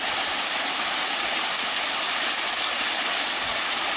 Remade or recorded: remade